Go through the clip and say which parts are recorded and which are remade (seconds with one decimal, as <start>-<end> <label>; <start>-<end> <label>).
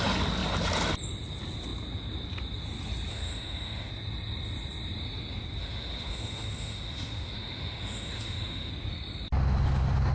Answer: 0.0-3.1 recorded; 3.1-3.9 remade; 3.9-5.6 recorded; 5.6-8.7 remade; 8.7-10.1 recorded